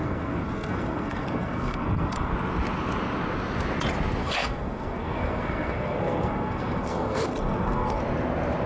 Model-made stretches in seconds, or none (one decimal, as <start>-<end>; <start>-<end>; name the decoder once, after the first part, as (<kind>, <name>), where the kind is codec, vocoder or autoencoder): 0.0-2.3 (codec, SNAC); 4.2-8.0